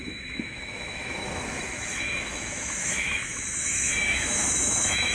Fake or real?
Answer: fake